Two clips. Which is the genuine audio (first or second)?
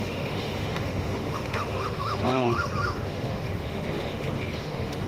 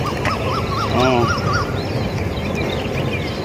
second